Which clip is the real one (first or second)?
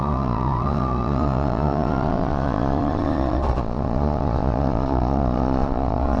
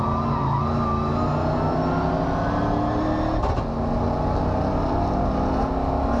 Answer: second